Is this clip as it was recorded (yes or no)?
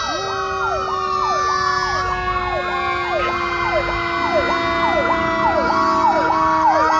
yes